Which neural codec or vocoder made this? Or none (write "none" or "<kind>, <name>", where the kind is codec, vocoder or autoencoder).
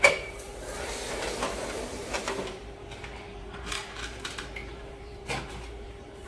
vocoder, BigVGAN v2